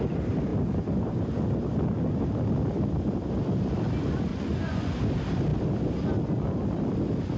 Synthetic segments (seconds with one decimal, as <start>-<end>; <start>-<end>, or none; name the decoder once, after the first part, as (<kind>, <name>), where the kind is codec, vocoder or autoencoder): 4.3-4.9 (vocoder, Vocos)